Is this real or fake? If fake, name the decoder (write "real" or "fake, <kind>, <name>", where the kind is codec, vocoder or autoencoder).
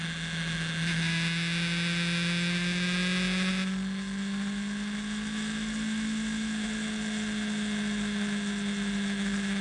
real